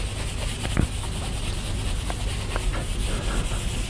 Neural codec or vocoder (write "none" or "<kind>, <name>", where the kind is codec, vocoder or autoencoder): none